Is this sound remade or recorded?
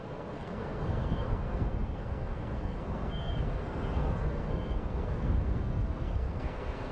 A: remade